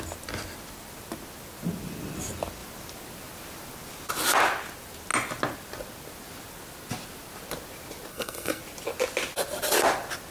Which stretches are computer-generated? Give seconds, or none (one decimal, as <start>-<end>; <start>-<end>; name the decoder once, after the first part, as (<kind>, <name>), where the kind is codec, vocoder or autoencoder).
8.1-8.6 (codec, SNAC)

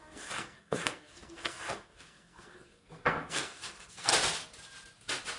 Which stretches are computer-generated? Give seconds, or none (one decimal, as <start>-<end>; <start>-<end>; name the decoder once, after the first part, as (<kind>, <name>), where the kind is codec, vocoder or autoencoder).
0.0-4.1 (codec, SNAC)